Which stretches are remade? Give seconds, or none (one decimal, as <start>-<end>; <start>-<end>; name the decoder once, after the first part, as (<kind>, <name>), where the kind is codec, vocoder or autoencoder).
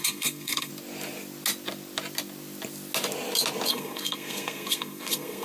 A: 0.0-0.7 (codec, SNAC); 3.7-5.4